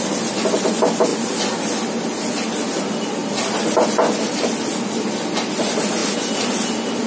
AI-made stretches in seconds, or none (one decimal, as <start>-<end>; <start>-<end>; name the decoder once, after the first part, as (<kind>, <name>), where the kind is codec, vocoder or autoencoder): none